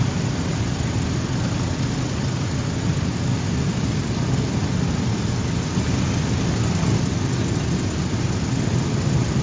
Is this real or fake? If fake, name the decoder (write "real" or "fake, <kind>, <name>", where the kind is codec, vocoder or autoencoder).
real